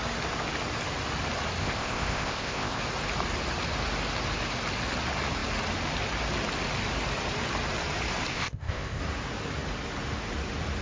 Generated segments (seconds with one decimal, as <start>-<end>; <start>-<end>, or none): 1.6-2.8; 8.3-9.0